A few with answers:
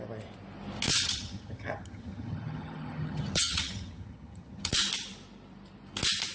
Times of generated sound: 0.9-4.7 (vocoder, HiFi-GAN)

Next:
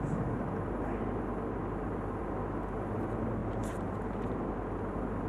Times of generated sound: 3.4-4.2 (vocoder, BigVGAN v2)